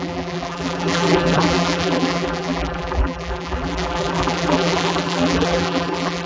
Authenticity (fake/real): fake